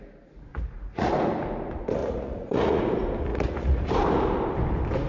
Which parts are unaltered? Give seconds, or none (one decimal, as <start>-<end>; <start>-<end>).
0.0-0.5; 1.1-2.0; 2.8-3.3; 3.9-5.1

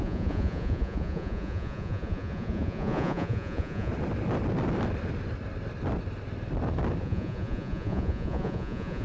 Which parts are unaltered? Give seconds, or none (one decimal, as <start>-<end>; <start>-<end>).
3.9-7.0